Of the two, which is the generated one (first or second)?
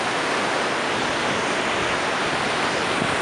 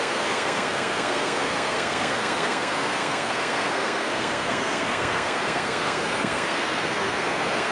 second